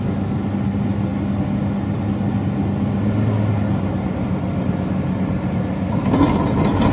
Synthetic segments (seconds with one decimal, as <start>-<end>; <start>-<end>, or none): none